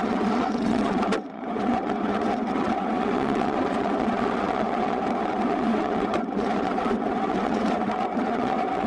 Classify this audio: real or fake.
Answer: fake